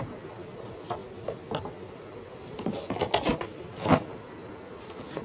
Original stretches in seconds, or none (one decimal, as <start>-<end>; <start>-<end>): 0.0-5.2